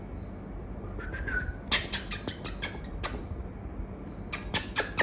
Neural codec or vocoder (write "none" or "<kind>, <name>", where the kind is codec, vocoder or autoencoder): none